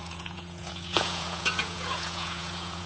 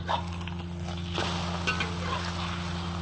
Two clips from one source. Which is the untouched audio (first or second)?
second